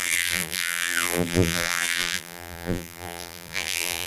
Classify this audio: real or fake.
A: fake